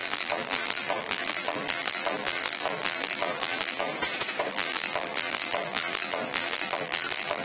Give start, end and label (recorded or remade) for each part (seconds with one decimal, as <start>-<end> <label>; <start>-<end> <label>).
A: 0.0-3.9 remade; 3.9-4.5 recorded; 4.5-7.4 remade